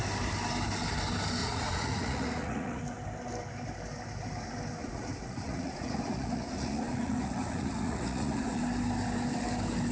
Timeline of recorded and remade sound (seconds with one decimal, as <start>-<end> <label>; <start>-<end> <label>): 0.0-1.4 recorded; 1.4-2.8 remade; 2.8-4.8 recorded; 4.8-8.6 remade; 8.6-9.9 recorded